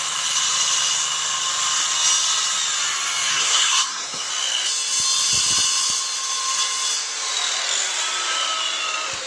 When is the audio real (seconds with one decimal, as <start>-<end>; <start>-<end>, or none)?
0.0-3.3; 4.3-9.3